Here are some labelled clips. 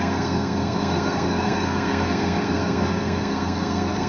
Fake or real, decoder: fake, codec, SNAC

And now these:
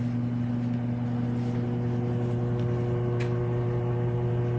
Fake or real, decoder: real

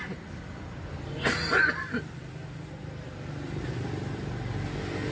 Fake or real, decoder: real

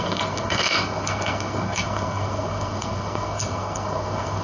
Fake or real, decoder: fake, codec, SNAC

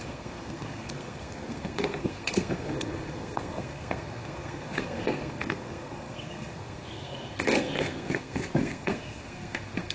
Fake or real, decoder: fake, codec, SNAC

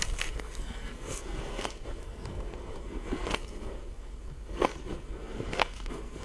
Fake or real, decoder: fake, codec, SNAC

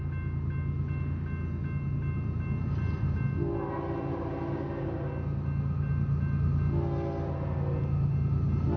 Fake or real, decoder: real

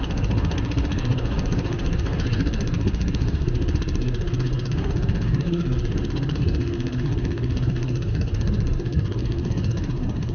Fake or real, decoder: fake, codec, SNAC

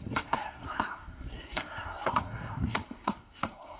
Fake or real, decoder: fake, codec, SNAC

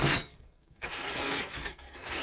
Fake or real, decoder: fake, codec, SNAC